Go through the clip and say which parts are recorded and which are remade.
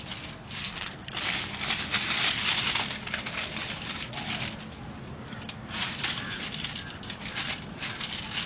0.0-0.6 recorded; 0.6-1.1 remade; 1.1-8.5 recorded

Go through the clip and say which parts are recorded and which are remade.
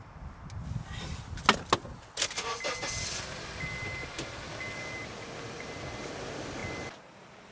0.0-7.5 recorded